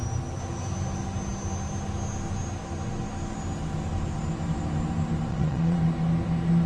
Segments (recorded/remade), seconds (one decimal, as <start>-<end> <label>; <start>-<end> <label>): 0.0-5.3 recorded; 5.3-5.8 remade; 5.8-6.7 recorded